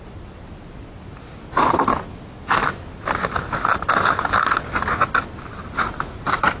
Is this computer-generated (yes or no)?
no